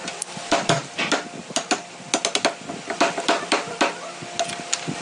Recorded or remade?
recorded